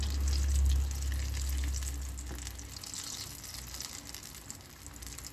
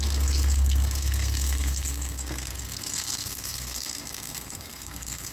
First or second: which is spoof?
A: second